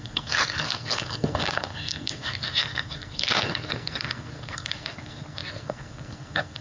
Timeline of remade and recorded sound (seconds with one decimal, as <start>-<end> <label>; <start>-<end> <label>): 0.0-6.6 remade